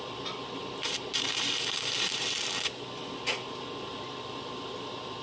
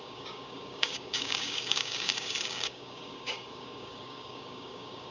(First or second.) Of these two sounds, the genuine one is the first